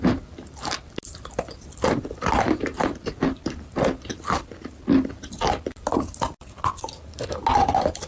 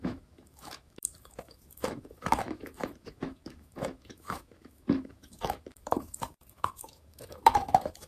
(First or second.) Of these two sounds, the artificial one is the second